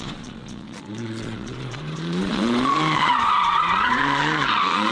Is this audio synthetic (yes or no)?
yes